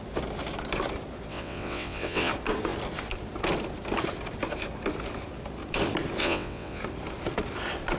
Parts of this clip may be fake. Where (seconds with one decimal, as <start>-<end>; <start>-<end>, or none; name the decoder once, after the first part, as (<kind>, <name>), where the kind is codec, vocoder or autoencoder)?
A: 1.3-2.3 (vocoder, WaveNeXt); 6.2-6.8